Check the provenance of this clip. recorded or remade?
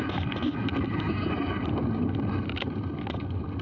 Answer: recorded